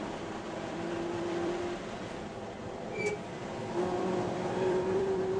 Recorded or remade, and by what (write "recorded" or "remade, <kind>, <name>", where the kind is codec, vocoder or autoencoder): remade, vocoder, BigVGAN v2